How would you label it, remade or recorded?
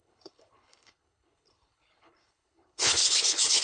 remade